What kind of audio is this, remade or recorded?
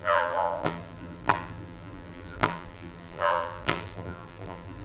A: remade